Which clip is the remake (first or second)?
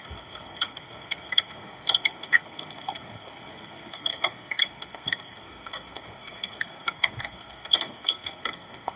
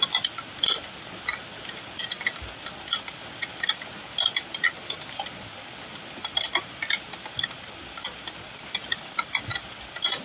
first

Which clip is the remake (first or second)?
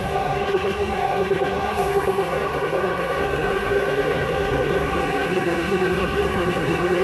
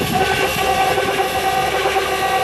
first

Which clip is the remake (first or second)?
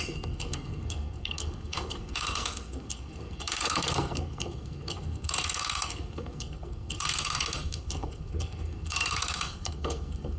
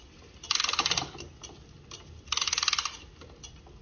first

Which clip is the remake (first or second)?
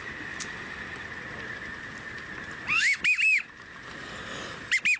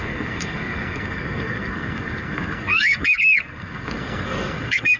second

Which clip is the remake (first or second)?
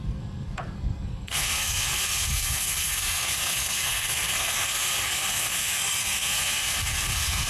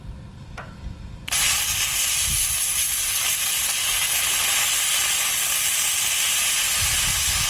first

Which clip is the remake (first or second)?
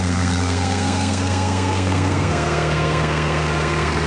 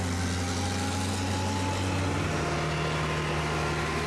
first